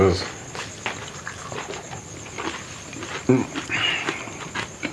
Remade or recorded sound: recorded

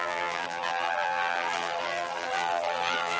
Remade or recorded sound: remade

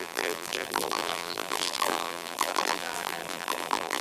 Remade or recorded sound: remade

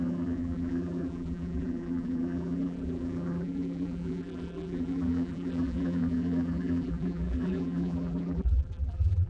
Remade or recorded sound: remade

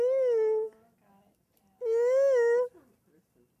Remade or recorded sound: recorded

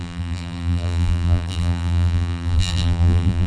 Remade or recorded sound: remade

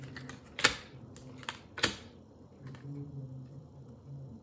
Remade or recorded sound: recorded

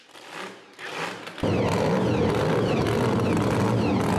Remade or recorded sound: recorded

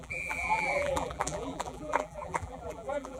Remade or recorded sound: remade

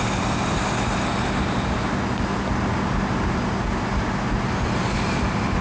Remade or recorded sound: recorded